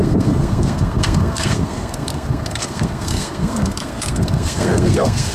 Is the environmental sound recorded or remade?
remade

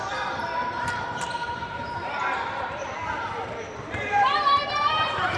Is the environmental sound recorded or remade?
remade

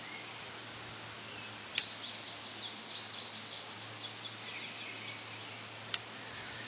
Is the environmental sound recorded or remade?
recorded